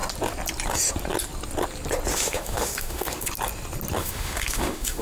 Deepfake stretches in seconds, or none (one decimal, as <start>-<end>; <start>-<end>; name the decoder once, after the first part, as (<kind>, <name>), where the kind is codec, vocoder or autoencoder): 2.1-3.3 (autoencoder, DAC-VAE); 4.0-5.0